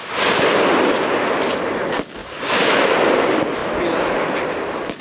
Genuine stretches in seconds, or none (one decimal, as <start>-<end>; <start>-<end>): 0.0-2.2; 2.7-5.0